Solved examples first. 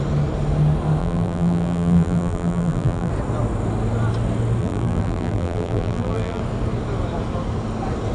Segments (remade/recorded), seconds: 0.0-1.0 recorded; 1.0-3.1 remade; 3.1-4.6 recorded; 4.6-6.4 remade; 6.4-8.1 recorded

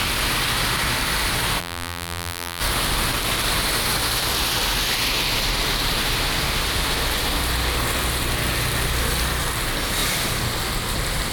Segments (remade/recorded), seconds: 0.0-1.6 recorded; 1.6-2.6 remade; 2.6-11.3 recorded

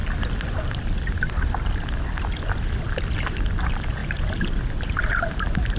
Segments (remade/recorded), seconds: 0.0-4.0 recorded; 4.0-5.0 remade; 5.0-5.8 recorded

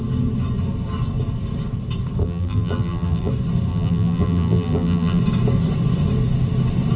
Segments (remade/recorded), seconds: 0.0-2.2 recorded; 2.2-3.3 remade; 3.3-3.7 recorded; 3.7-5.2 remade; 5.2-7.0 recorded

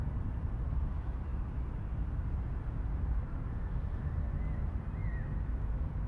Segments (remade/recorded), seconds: 0.0-5.0 remade; 5.0-6.1 recorded

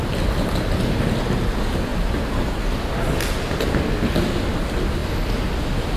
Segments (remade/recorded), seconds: 0.0-1.9 recorded; 1.9-2.9 remade; 2.9-6.0 recorded

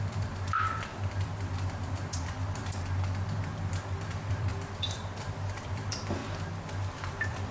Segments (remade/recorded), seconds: 0.0-2.6 remade; 2.6-3.8 recorded; 3.8-6.2 remade; 6.2-7.1 recorded; 7.1-7.5 remade

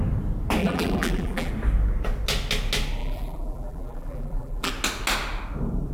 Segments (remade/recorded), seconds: 0.0-0.6 recorded; 0.6-1.5 remade; 1.5-3.0 recorded; 3.0-4.7 remade; 4.7-5.9 recorded